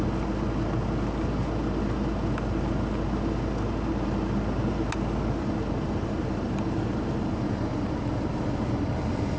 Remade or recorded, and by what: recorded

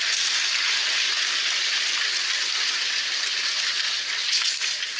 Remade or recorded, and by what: recorded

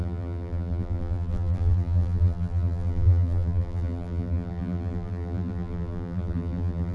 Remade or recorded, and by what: remade, vocoder, BigVGAN v2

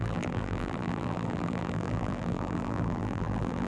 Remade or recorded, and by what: remade, vocoder, BigVGAN v2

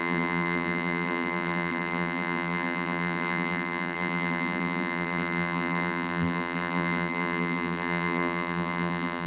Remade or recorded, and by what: remade, vocoder, BigVGAN v2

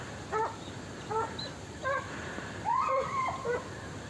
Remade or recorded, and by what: remade, vocoder, BigVGAN v2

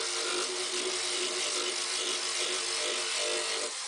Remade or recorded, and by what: recorded